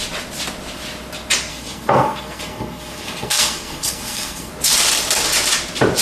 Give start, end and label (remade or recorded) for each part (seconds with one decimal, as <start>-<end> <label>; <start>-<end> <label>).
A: 0.0-1.5 recorded; 1.5-4.5 remade; 4.5-6.0 recorded